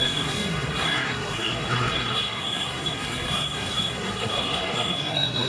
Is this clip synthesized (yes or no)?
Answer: yes